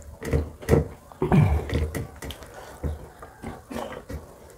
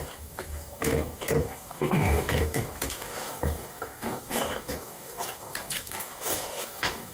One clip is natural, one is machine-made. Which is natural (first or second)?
first